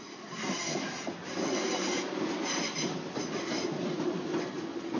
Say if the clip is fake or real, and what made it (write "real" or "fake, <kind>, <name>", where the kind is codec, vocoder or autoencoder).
real